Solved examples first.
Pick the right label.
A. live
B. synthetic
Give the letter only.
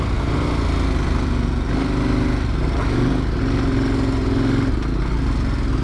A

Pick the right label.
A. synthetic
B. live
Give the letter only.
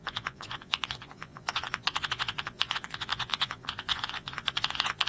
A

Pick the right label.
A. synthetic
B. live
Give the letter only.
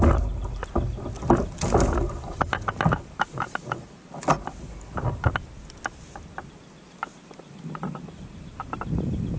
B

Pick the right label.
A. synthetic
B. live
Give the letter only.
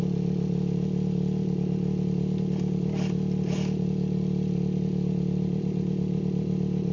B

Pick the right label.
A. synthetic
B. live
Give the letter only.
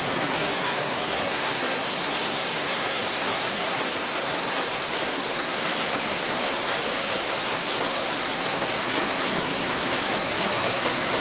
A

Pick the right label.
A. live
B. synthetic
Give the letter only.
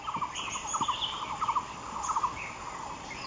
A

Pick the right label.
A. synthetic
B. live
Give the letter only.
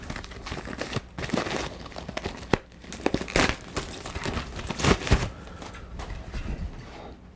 B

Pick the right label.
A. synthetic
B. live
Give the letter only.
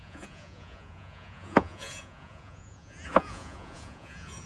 A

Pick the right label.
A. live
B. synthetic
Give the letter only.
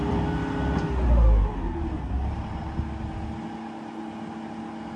A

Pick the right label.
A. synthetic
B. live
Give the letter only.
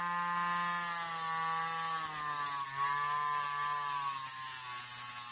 B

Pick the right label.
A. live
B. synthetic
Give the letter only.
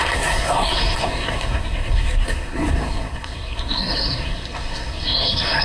B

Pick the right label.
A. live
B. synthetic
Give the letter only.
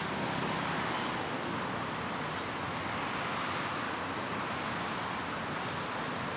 A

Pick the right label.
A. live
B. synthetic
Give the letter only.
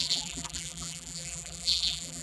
B